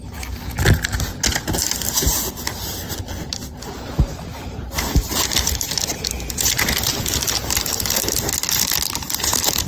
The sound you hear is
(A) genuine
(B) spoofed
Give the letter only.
A